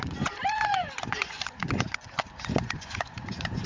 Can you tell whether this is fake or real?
fake